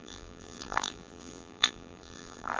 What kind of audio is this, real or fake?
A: fake